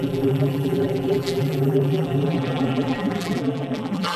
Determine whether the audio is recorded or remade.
remade